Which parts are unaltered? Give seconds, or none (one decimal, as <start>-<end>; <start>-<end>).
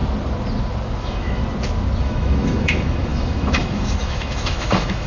0.0-1.0; 1.4-2.0